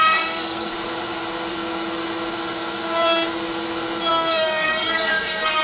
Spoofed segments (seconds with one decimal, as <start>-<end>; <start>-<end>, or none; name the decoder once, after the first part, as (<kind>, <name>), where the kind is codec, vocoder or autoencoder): 0.0-0.7 (codec, SNAC); 4.1-5.6